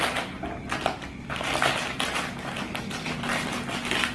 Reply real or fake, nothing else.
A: real